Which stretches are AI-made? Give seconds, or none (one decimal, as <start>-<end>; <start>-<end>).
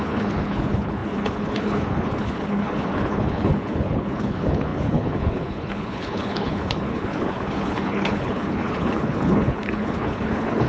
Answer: 0.0-10.7